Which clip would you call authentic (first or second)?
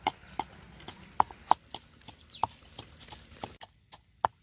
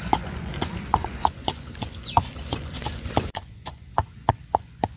first